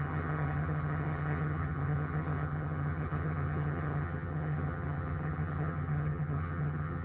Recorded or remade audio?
remade